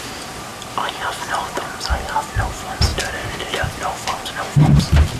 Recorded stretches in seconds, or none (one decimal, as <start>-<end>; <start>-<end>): 0.0-5.2